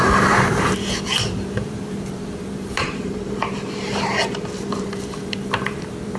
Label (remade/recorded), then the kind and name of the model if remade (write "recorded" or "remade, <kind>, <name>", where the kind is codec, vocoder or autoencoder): remade, vocoder, BigVGAN v2